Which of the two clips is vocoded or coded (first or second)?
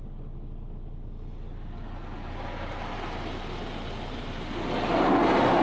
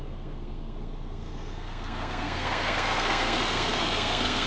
second